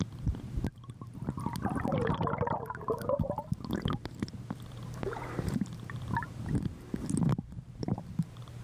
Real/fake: fake